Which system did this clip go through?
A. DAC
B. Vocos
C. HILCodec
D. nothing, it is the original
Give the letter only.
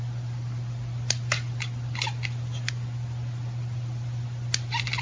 D